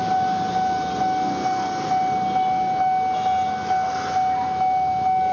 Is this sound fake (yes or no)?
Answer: no